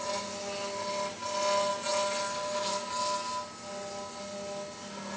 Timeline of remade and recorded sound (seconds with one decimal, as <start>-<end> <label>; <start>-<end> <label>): 0.0-5.2 recorded